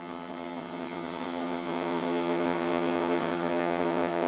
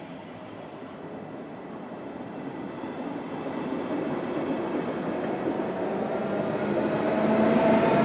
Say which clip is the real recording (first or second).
second